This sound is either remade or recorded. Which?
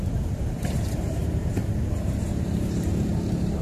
remade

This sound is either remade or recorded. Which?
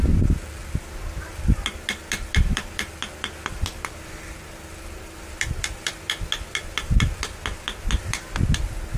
recorded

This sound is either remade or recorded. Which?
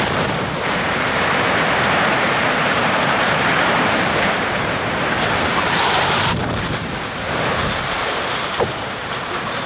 remade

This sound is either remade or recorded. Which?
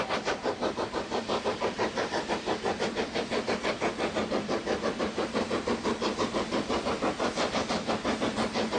remade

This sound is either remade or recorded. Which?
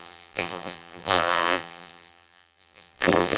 remade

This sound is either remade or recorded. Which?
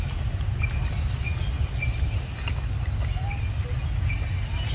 recorded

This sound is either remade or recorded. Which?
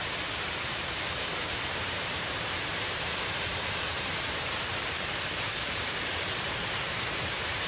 remade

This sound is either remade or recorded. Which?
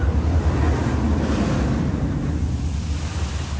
recorded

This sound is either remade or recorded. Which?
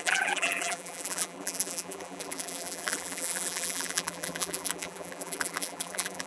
remade